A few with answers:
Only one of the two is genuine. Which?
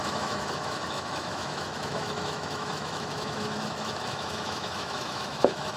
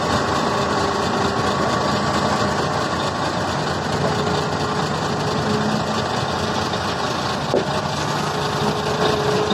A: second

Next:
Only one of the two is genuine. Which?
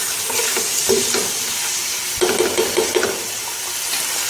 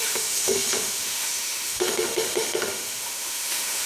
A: first